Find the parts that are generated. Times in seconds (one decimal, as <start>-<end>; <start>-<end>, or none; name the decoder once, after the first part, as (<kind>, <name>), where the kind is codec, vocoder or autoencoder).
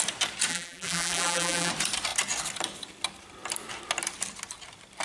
0.5-1.7 (vocoder, BigVGAN v2)